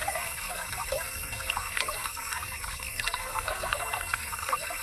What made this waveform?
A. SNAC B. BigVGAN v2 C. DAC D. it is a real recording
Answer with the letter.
A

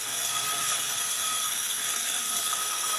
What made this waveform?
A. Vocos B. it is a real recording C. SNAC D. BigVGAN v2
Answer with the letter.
C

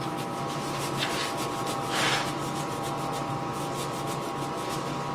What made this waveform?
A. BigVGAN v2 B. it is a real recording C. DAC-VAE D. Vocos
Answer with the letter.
B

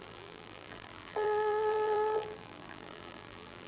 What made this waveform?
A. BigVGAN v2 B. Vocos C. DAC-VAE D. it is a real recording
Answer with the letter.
A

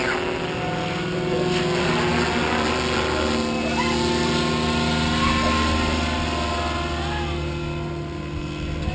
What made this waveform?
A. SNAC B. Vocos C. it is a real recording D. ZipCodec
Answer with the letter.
C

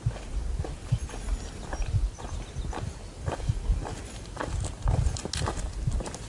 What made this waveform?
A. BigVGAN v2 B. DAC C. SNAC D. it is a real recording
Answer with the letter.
D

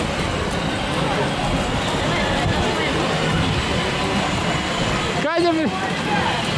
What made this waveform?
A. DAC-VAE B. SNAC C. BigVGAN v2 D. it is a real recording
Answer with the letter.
D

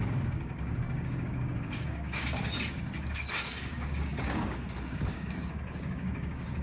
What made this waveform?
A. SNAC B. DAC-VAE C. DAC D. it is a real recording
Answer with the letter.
C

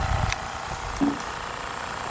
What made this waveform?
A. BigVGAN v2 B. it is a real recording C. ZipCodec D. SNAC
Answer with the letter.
B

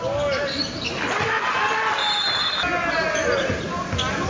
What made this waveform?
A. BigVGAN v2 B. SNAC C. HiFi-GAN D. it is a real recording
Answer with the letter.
D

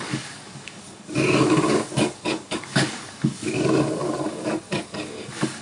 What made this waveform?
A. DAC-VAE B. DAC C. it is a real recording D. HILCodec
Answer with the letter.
B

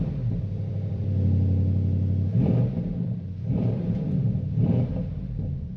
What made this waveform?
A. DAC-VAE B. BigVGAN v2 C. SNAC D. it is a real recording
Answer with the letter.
B